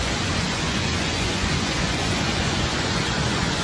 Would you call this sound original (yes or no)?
no